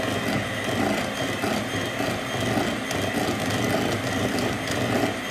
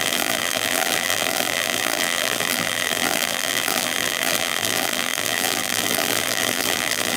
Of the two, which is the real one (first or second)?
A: first